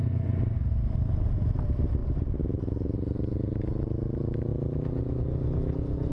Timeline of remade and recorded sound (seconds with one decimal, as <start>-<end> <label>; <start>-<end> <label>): 0.0-6.1 recorded

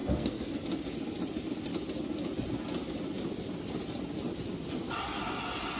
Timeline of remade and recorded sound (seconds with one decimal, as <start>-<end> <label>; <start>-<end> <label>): 0.0-0.6 remade; 0.6-5.8 recorded

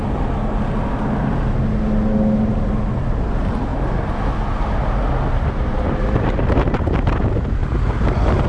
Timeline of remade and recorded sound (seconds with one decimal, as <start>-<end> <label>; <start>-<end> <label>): 0.0-3.1 recorded; 3.1-3.7 remade; 3.7-5.3 recorded; 5.3-7.6 remade; 7.6-8.5 recorded

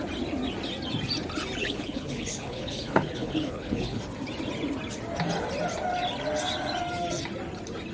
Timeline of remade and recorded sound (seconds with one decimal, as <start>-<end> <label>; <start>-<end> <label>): 0.0-1.6 recorded; 1.6-4.0 remade; 4.0-7.9 recorded

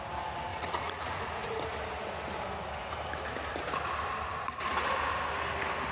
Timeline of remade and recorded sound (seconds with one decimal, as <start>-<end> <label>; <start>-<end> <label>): 0.0-0.5 recorded; 0.5-1.5 remade; 1.5-5.9 recorded

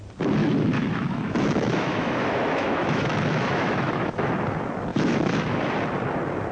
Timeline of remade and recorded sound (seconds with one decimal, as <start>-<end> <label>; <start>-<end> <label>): 0.0-0.4 recorded; 0.4-4.3 remade; 4.3-4.9 recorded; 4.9-5.6 remade; 5.6-6.5 recorded